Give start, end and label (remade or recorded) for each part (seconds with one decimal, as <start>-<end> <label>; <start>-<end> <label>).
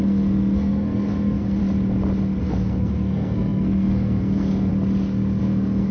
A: 0.0-1.6 remade; 1.6-2.4 recorded; 2.4-4.7 remade; 4.7-5.4 recorded; 5.4-5.9 remade